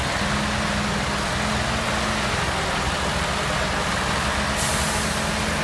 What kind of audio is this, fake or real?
real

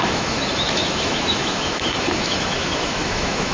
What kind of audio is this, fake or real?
fake